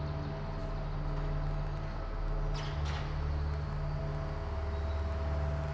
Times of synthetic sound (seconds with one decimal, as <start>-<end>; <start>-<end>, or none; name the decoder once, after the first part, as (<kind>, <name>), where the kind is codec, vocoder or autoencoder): none

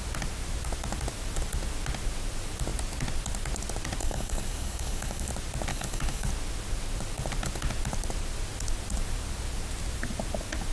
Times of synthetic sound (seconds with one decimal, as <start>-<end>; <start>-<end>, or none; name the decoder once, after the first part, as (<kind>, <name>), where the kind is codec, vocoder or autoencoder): 4.0-5.3 (codec, DAC); 5.7-6.3

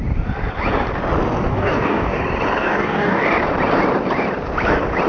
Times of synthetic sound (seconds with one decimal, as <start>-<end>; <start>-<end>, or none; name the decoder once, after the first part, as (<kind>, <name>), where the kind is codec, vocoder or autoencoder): 1.5-2.2 (codec, DAC); 2.6-3.2